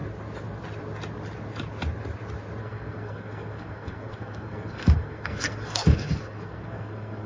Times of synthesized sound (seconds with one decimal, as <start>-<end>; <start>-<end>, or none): 2.6-7.3